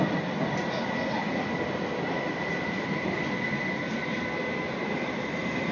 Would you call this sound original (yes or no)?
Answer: yes